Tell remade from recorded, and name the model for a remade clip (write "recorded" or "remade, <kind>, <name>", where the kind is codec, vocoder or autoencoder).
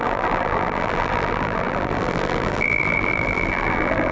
remade, vocoder, BigVGAN v2